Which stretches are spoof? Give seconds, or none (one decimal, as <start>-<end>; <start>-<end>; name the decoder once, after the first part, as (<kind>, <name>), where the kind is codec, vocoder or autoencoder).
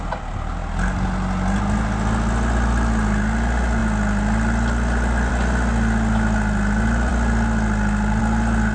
none